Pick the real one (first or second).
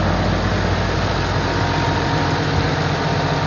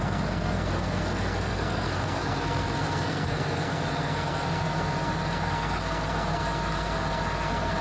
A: first